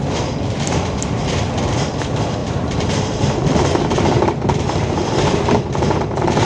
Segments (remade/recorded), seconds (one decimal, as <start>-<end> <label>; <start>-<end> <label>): 0.0-2.4 recorded; 2.4-6.4 remade

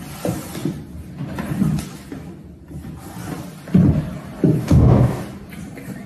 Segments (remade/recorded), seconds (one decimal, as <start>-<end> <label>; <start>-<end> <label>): 0.0-4.6 recorded; 4.6-5.2 remade; 5.2-6.1 recorded

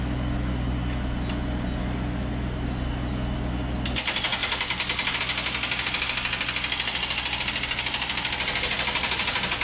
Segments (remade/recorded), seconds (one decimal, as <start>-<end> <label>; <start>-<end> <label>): 0.0-9.6 recorded

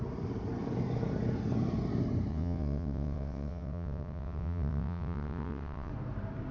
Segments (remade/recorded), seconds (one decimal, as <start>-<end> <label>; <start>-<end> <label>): 0.0-2.3 recorded; 2.3-5.9 remade; 5.9-6.5 recorded

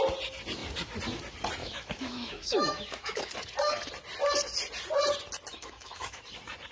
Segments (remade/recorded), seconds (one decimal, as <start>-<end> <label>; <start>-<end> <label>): 0.0-1.6 recorded; 1.6-3.3 remade; 3.3-5.5 recorded; 5.5-6.2 remade; 6.2-6.7 recorded

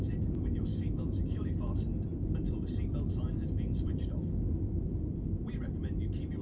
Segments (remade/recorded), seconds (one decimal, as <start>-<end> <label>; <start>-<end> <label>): 0.0-0.7 recorded; 0.7-1.4 remade; 1.4-6.4 recorded

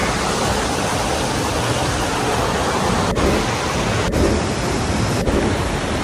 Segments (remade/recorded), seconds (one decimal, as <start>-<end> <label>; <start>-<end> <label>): 0.0-6.0 recorded